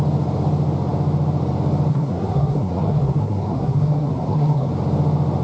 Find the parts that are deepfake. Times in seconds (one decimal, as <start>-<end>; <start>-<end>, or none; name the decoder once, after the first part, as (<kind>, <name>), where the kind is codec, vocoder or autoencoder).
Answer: 1.9-4.7 (codec, SNAC)